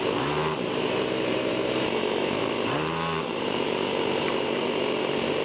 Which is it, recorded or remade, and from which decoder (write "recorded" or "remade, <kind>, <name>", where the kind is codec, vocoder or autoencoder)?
remade, vocoder, BigVGAN v2